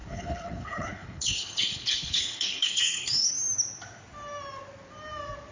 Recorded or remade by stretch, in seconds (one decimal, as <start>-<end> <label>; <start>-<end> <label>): 0.0-3.3 remade; 3.3-5.5 recorded